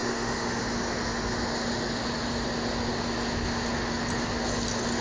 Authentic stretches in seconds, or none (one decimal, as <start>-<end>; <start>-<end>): 0.6-5.0